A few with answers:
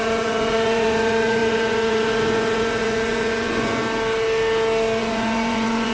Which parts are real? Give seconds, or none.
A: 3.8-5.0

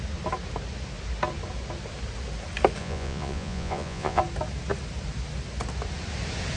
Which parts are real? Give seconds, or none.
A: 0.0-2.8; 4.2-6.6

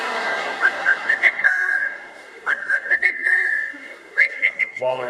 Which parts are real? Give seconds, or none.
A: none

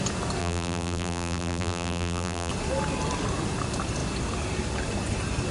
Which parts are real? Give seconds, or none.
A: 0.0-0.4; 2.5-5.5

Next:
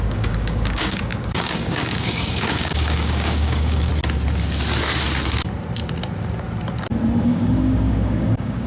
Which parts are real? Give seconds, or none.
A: 3.9-7.2